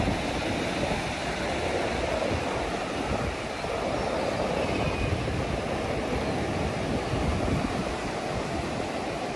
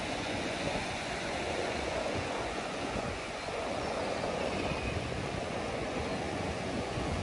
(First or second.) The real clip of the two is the first